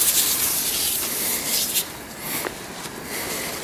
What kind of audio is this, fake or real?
real